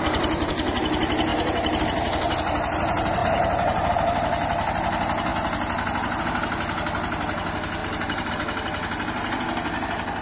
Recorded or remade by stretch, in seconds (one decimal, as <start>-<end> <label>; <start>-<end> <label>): 0.0-1.3 recorded; 1.3-1.8 remade; 1.8-3.2 recorded; 3.2-3.9 remade; 3.9-7.8 recorded; 7.8-8.3 remade; 8.3-10.2 recorded